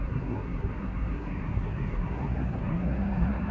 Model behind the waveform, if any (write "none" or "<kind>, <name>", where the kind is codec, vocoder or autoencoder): codec, SNAC